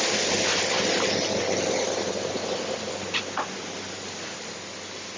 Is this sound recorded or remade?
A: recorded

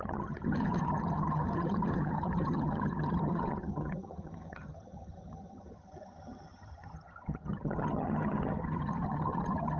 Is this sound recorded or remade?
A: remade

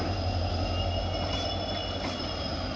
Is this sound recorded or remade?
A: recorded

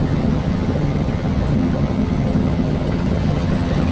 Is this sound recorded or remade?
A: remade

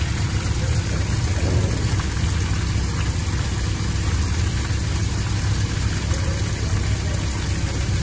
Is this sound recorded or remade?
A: recorded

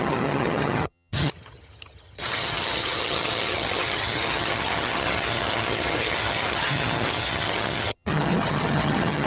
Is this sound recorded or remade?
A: remade